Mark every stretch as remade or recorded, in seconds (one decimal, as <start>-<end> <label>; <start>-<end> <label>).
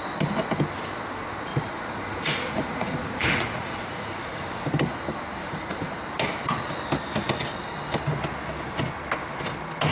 0.0-1.5 recorded; 1.5-4.4 remade; 4.4-5.4 recorded; 5.4-6.0 remade; 6.0-9.9 recorded